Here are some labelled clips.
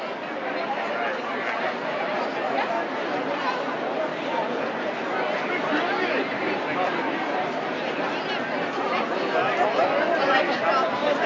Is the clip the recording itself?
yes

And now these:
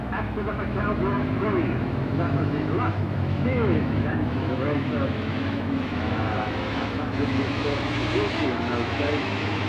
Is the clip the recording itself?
no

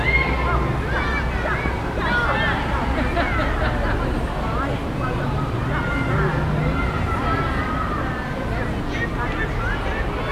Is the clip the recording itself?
yes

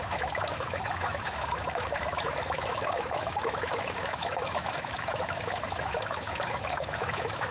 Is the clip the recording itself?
no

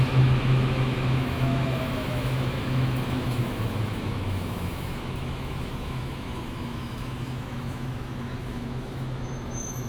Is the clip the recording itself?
no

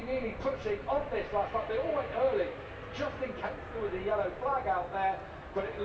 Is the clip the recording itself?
yes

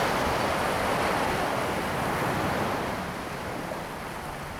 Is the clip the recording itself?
yes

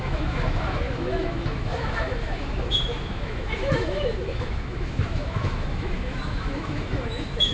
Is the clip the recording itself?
no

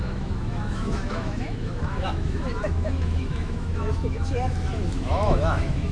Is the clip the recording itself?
no